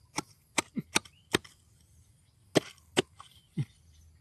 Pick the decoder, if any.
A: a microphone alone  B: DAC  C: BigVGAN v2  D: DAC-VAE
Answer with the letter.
A